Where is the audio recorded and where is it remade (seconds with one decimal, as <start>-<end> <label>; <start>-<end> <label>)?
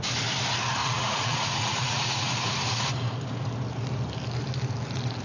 0.0-0.8 recorded; 0.8-2.3 remade; 2.3-5.2 recorded